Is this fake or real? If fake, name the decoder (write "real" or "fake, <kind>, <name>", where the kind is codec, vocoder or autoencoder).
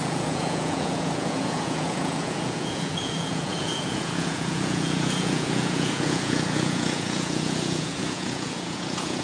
fake, vocoder, Vocos